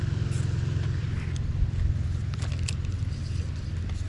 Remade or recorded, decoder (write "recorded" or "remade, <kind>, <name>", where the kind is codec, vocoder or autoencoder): recorded